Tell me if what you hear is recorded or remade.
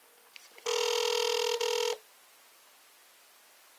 recorded